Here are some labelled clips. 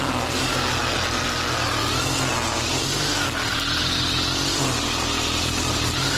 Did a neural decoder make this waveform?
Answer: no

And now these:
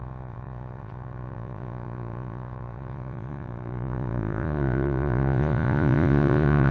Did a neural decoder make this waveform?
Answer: yes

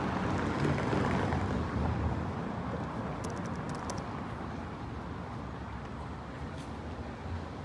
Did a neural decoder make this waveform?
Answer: no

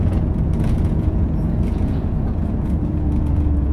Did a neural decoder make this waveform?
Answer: yes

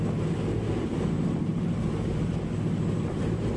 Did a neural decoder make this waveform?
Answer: no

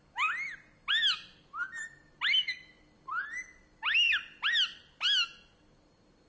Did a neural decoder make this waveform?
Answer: no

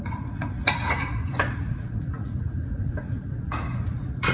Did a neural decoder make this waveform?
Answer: yes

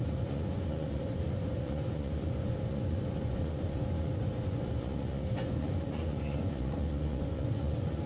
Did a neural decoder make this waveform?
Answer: yes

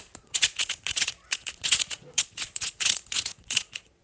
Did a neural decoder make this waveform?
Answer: yes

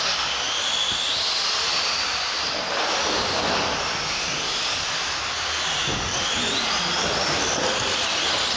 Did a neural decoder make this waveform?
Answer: no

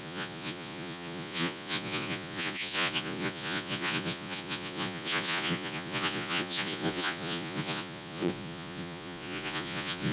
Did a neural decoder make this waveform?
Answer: yes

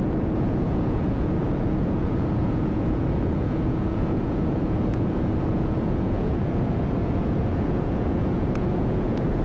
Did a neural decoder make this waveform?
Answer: yes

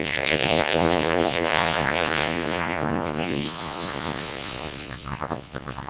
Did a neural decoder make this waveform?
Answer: yes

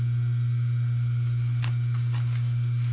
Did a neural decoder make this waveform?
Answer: no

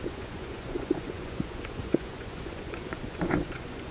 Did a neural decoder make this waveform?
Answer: yes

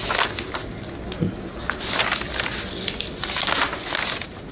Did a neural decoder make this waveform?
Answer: no